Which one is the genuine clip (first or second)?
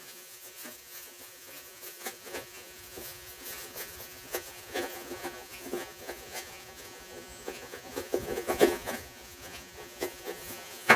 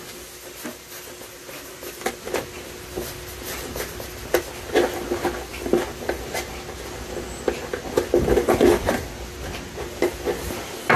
second